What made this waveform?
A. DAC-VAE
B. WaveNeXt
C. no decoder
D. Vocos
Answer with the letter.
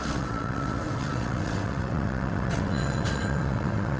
B